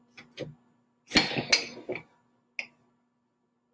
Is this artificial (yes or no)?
no